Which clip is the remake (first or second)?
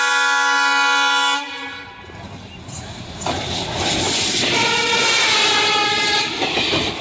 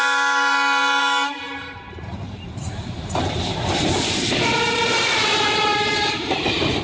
second